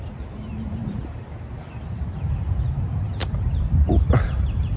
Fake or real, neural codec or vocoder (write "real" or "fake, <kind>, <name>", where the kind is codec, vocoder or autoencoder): fake, vocoder, BigVGAN v2